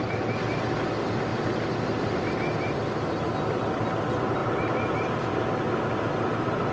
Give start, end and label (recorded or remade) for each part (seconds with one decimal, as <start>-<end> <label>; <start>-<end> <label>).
0.0-6.7 recorded